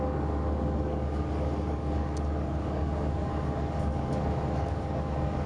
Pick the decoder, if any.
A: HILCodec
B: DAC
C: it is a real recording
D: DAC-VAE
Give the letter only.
B